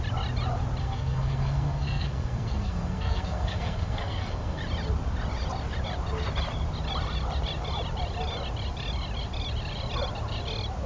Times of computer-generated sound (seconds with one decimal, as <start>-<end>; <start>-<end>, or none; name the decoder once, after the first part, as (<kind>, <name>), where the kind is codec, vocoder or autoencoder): 0.8-4.6 (codec, SNAC)